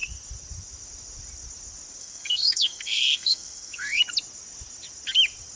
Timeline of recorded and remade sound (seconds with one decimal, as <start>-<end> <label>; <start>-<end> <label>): 0.0-2.0 recorded; 2.0-4.0 remade; 4.0-5.6 recorded